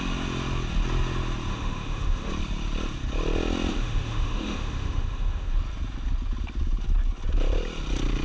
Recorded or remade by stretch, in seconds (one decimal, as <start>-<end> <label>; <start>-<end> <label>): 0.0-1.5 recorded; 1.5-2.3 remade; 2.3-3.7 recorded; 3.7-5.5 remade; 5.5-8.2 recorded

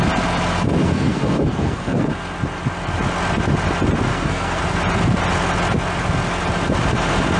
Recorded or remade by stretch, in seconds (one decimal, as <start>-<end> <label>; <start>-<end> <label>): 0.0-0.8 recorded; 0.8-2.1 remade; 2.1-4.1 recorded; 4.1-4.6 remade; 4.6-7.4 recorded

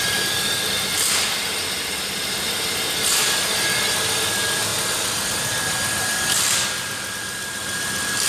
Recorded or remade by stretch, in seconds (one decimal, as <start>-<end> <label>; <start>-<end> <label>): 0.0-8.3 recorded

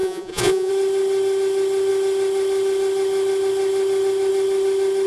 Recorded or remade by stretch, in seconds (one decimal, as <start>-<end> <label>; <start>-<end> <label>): 0.0-0.7 remade; 0.7-5.1 recorded

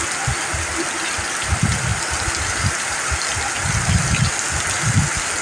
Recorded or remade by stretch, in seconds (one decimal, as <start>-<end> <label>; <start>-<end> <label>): 0.0-5.4 recorded

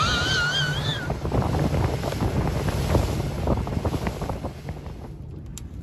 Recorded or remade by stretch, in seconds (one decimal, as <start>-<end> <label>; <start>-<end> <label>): 0.0-5.8 recorded

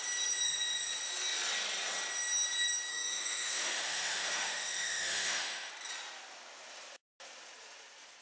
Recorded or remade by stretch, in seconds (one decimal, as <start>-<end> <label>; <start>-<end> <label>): 0.0-2.9 recorded; 2.9-5.7 remade; 5.7-8.2 recorded

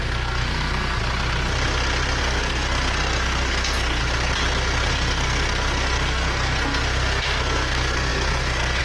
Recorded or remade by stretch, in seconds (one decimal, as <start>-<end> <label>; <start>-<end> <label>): 0.0-1.0 remade; 1.0-2.2 recorded; 2.2-4.0 remade; 4.0-4.9 recorded; 4.9-8.8 remade